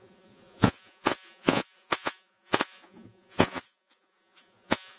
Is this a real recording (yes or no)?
no